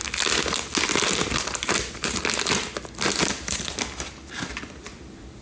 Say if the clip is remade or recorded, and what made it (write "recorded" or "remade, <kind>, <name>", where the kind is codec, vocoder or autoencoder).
recorded